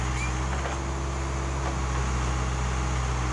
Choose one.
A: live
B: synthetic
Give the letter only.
A